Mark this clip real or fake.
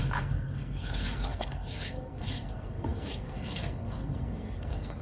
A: fake